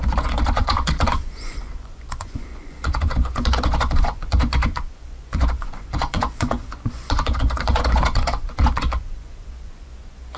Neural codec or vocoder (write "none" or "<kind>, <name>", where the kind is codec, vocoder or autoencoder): vocoder, Vocos